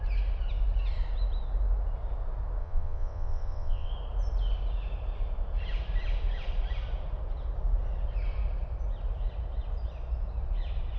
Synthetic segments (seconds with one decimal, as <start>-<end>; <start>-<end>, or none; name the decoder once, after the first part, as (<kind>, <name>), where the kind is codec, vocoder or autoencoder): 2.6-3.9 (vocoder, WaveNeXt)